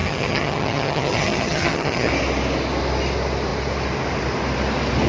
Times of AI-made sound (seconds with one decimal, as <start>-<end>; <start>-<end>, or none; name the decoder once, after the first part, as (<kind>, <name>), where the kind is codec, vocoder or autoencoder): 0.0-2.1 (vocoder, HiFi-GAN)